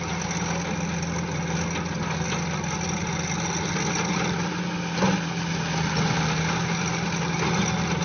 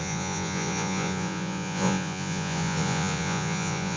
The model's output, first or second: second